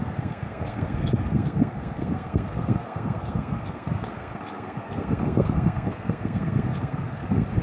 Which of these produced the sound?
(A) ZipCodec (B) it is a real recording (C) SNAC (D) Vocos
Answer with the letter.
C